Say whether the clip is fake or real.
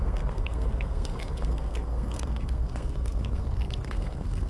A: fake